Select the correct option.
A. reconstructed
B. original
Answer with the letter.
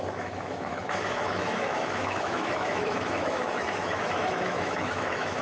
A